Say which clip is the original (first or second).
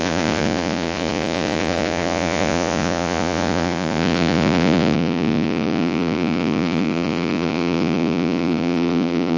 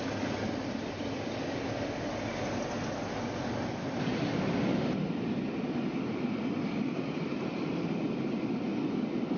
second